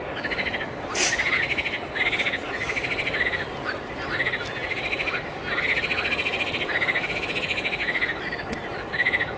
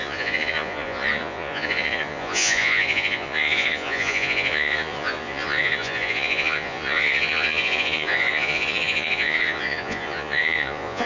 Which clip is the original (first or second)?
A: first